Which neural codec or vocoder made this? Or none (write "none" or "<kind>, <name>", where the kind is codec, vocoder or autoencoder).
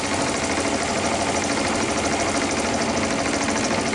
none